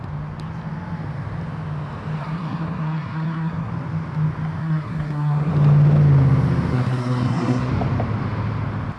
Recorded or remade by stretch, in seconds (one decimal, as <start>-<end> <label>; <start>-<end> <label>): 0.0-2.2 recorded; 2.2-3.7 remade; 3.7-4.6 recorded; 4.6-5.5 remade; 5.5-6.7 recorded; 6.7-7.7 remade; 7.7-9.0 recorded